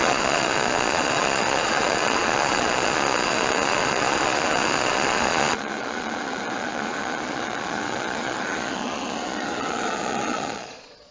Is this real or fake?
fake